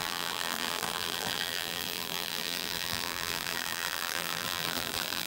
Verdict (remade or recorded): remade